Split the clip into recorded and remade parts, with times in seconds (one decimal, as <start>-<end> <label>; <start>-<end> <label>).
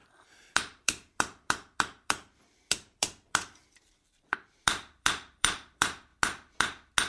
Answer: 0.0-6.1 remade; 6.1-7.1 recorded